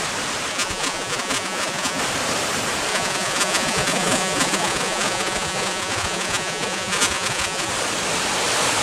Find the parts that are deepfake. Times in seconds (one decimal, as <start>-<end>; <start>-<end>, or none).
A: 0.5-2.0; 2.9-7.7